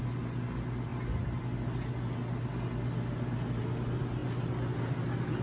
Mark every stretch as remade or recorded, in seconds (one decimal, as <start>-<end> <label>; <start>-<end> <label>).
0.0-5.4 recorded